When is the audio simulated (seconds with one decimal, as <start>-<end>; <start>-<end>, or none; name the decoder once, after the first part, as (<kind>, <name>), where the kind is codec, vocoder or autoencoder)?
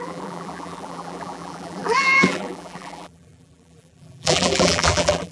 0.0-5.3 (vocoder, BigVGAN v2)